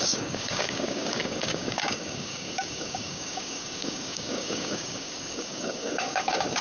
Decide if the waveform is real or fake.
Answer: fake